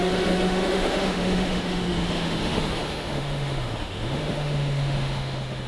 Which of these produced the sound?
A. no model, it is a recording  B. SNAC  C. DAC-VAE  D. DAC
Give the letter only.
C